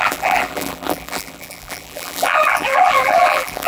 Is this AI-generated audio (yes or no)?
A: yes